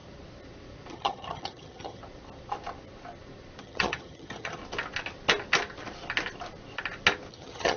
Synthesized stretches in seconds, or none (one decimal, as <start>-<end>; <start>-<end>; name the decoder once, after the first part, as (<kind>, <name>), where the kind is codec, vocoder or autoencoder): 0.9-2.0 (vocoder, HiFi-GAN); 3.6-4.6; 7.3-7.8